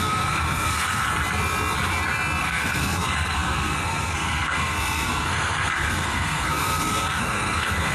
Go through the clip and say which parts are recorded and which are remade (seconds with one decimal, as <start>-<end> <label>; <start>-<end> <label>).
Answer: 0.0-1.0 remade; 1.0-2.4 recorded; 2.4-7.9 remade